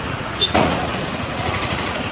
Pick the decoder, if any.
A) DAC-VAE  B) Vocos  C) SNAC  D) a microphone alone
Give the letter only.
B